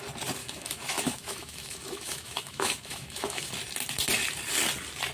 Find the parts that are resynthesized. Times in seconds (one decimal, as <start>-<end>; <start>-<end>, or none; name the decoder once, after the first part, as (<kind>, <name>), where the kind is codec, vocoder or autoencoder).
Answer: 0.4-3.5 (autoencoder, DAC-VAE)